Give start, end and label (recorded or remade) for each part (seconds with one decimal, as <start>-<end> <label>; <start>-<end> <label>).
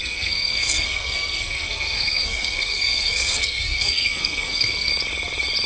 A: 0.0-4.9 remade; 4.9-5.7 recorded